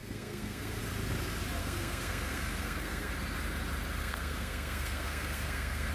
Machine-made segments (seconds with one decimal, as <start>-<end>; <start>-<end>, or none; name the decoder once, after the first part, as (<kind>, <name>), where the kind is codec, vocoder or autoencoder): 0.0-0.8 (codec, SNAC); 1.6-3.1; 4.0-5.9